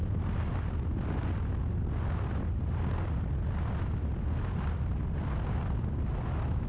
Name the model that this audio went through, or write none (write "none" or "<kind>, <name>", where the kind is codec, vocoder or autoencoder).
none